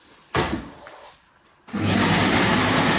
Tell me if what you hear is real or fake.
real